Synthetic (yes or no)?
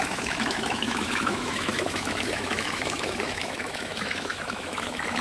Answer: yes